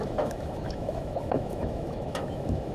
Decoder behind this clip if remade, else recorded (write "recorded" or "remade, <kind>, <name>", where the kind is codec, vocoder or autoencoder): remade, autoencoder, DAC-VAE